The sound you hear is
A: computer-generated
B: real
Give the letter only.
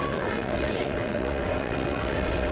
A